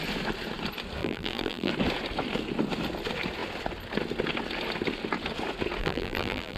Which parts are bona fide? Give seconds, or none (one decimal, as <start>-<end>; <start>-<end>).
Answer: 0.0-1.0; 1.7-5.8